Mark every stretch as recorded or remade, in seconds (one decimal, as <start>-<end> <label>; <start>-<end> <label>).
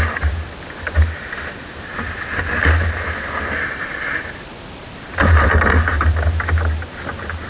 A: 0.0-1.9 recorded; 1.9-2.4 remade; 2.4-7.5 recorded